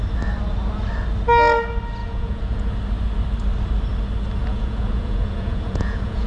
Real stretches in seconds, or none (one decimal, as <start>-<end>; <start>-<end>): 0.0-2.0; 2.7-4.4